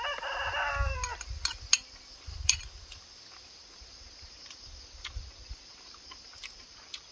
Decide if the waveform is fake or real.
real